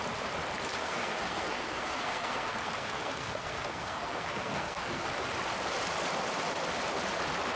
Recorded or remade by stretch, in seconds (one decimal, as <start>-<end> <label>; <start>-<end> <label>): 0.0-0.8 recorded; 0.8-5.1 remade; 5.1-7.6 recorded